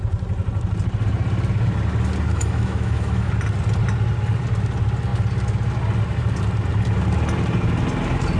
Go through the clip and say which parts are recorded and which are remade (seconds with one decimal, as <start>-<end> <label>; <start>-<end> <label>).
0.0-2.3 recorded; 2.3-3.3 remade; 3.3-8.4 recorded